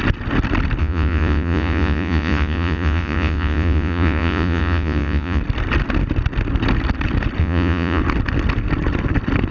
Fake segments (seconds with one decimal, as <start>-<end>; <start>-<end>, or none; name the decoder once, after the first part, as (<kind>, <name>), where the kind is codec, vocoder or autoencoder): 0.8-5.4 (vocoder, Vocos); 7.4-8.0